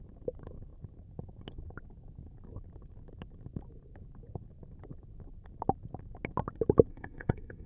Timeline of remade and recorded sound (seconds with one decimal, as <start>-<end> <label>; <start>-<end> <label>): 0.0-6.9 recorded; 6.9-7.7 remade

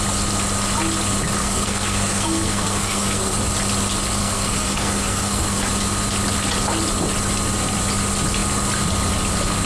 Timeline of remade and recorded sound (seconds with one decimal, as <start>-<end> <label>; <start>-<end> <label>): 0.0-1.4 recorded; 1.4-3.4 remade; 3.4-4.2 recorded; 4.2-5.7 remade; 5.7-9.7 recorded

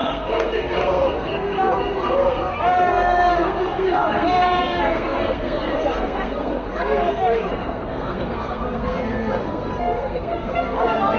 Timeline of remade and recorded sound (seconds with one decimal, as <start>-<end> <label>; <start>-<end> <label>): 0.0-11.2 remade

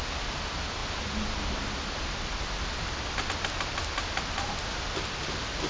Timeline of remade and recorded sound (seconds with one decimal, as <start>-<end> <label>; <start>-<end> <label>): 0.0-5.7 recorded

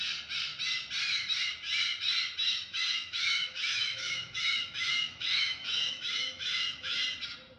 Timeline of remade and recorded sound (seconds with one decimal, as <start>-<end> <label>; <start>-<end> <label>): 0.0-2.4 recorded; 2.4-7.0 remade; 7.0-7.6 recorded

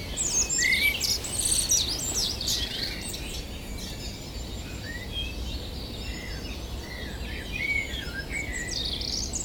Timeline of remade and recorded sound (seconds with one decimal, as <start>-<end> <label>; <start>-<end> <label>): 0.0-2.2 recorded; 2.2-2.9 remade; 2.9-9.4 recorded